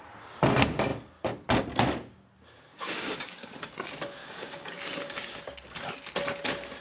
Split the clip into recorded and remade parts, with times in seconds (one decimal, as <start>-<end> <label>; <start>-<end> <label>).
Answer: 0.0-2.7 recorded; 2.7-3.6 remade; 3.6-4.2 recorded; 4.2-5.4 remade; 5.4-6.8 recorded